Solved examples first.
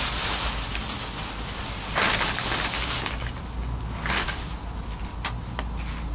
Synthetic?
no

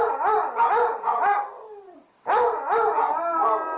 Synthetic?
no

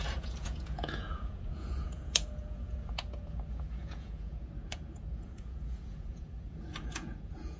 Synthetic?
yes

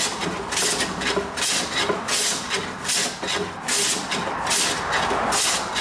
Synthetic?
no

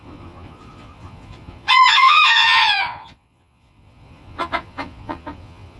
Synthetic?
yes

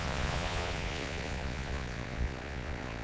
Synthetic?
yes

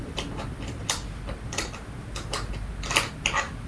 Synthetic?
no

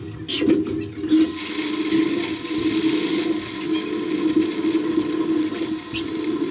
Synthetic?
no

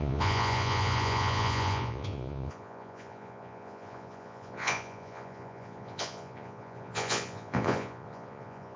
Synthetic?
yes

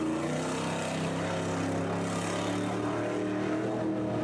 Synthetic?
no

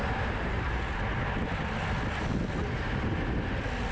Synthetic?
no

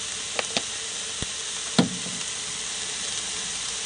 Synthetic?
no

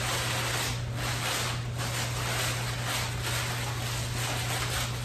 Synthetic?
no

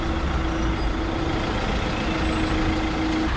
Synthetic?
no